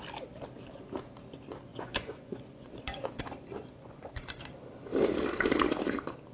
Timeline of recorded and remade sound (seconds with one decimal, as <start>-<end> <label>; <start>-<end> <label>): 0.0-1.7 recorded; 1.7-3.2 remade; 3.2-3.6 recorded; 3.6-4.1 remade; 4.1-6.3 recorded